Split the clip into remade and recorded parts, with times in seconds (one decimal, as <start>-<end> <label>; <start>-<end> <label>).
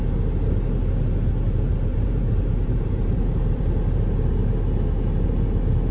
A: 0.0-1.7 recorded; 1.7-3.6 remade; 3.6-5.9 recorded